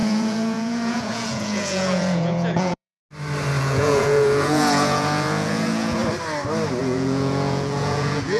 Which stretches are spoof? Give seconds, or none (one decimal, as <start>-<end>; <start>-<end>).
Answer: 0.0-3.0; 3.6-6.0; 6.8-8.4